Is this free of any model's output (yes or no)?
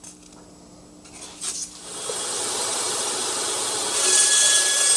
yes